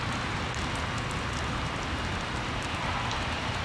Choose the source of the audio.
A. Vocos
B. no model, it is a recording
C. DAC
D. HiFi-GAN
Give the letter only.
B